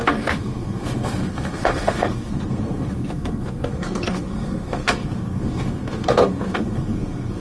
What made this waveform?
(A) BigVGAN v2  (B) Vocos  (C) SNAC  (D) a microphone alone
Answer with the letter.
C